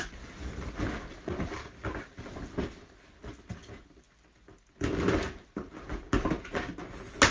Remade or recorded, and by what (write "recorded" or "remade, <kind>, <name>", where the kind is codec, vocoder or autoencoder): recorded